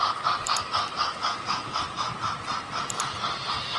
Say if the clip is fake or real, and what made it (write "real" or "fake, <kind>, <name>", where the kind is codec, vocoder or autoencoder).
fake, vocoder, BigVGAN v2